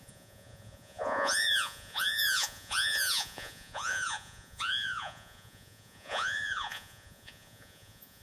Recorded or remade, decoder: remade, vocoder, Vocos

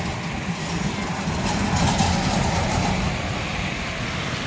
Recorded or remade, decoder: recorded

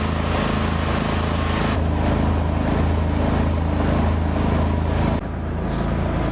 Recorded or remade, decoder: recorded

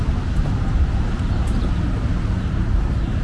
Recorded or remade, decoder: recorded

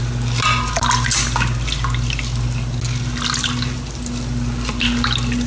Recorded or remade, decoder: recorded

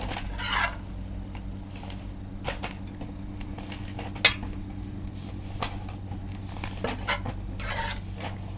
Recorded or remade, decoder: recorded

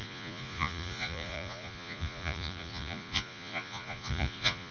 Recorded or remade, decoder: remade, vocoder, Vocos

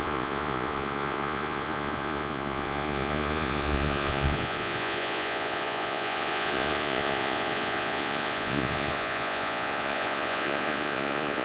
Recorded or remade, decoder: remade, vocoder, Vocos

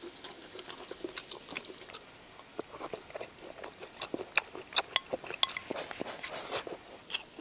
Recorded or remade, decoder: recorded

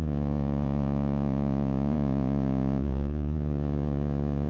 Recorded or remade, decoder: remade, vocoder, Vocos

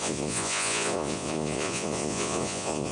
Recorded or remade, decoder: remade, vocoder, Vocos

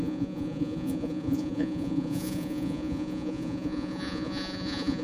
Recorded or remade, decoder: remade, vocoder, Vocos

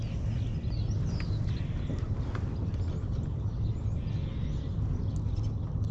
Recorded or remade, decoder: recorded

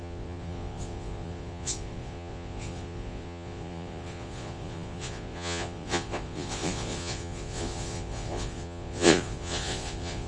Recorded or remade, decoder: remade, vocoder, Vocos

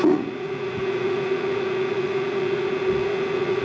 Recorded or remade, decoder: remade, vocoder, Vocos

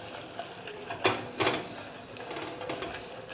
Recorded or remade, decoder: recorded